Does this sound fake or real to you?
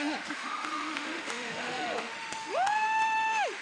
fake